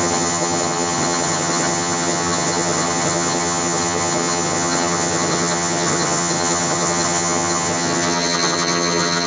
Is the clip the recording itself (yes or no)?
no